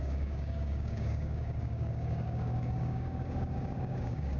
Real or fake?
fake